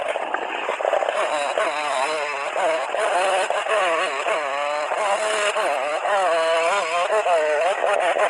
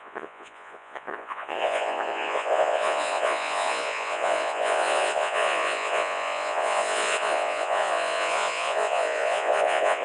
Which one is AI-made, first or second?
second